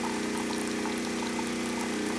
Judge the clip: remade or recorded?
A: recorded